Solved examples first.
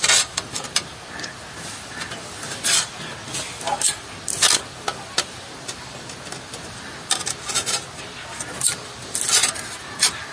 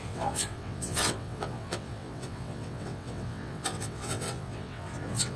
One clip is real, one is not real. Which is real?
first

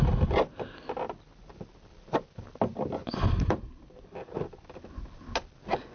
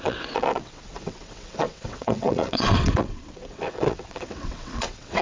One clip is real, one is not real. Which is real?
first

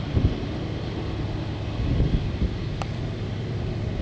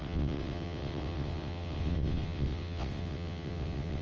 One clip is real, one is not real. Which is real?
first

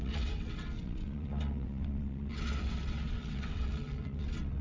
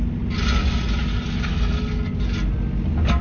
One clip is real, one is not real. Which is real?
second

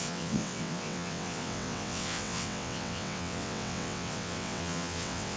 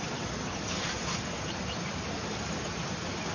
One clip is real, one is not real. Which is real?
second